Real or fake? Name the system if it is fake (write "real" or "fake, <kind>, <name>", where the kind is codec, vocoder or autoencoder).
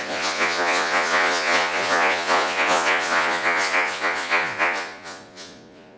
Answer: fake, vocoder, Vocos